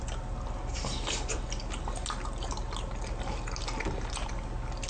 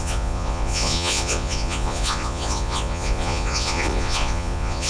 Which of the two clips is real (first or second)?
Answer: first